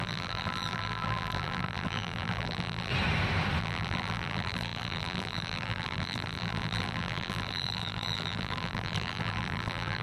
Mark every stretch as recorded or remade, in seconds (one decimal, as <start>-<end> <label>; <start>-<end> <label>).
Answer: 0.0-2.9 remade; 2.9-3.6 recorded; 3.6-10.0 remade